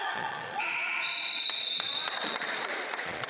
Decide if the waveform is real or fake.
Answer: fake